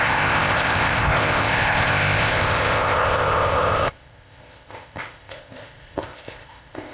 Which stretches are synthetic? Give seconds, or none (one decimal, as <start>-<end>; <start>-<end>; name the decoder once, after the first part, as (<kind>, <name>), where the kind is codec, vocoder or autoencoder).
0.0-6.9 (codec, ZipCodec)